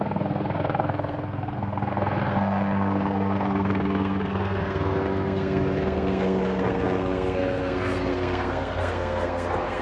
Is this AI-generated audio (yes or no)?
yes